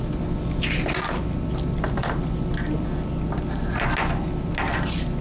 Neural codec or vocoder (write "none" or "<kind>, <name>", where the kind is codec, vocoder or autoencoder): none